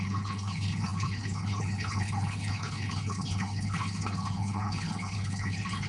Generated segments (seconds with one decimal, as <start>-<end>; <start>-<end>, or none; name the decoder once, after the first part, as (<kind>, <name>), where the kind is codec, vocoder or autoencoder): 0.0-5.9 (codec, HILCodec)